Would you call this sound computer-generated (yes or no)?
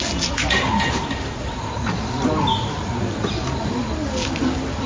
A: no